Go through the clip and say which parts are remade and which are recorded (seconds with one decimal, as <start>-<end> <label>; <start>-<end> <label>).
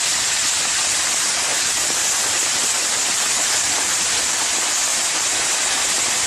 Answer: 0.0-6.3 recorded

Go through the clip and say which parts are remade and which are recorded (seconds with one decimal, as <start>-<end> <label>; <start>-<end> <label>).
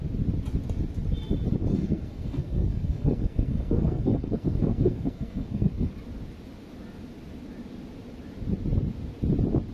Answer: 0.0-1.7 recorded; 1.7-5.9 remade; 5.9-9.7 recorded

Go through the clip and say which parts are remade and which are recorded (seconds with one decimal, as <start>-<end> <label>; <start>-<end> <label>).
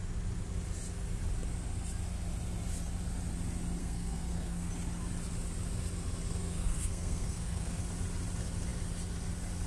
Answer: 0.0-3.8 recorded; 3.8-4.7 remade; 4.7-6.4 recorded; 6.4-7.8 remade; 7.8-9.7 recorded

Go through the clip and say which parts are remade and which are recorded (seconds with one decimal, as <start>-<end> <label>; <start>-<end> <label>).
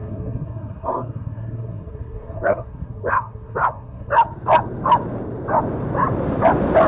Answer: 0.0-4.1 remade; 4.1-6.9 recorded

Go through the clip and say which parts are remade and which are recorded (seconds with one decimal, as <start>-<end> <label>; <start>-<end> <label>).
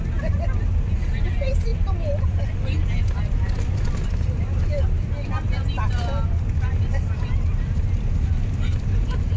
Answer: 0.0-9.4 recorded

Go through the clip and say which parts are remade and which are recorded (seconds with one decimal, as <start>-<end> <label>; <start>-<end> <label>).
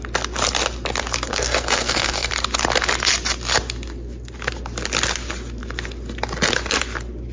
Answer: 0.0-1.3 recorded; 1.3-2.3 remade; 2.3-7.3 recorded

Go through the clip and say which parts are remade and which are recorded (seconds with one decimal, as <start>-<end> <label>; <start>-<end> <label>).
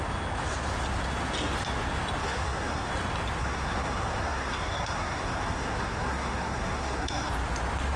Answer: 0.0-2.2 recorded; 2.2-2.9 remade; 2.9-3.4 recorded; 3.4-7.3 remade; 7.3-8.0 recorded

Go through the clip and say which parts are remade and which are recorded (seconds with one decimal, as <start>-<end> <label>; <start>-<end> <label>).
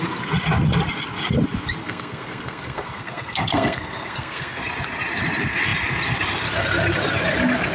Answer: 0.0-1.8 recorded; 1.8-4.6 remade; 4.6-7.7 recorded